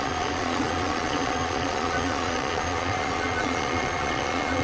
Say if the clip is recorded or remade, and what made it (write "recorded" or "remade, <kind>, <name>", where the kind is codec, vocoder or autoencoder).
remade, vocoder, Vocos